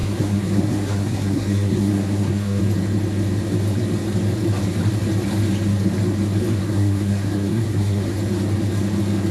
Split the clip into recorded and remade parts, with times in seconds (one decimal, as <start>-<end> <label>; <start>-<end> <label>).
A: 0.0-2.6 remade; 2.6-6.5 recorded; 6.5-8.1 remade; 8.1-9.3 recorded